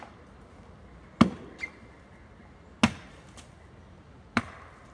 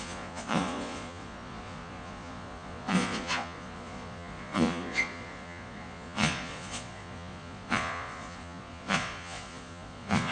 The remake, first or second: second